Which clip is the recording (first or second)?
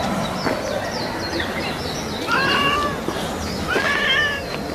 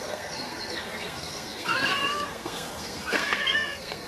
first